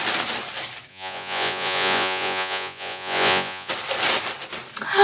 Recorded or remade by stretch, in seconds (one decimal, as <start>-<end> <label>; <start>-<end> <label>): 0.0-0.9 recorded; 0.9-3.7 remade; 3.7-5.0 recorded